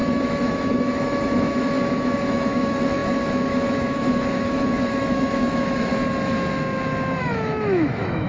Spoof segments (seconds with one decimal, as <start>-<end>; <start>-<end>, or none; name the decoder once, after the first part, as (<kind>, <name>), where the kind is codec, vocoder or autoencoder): 0.0-5.9 (autoencoder, DAC-VAE); 7.2-8.3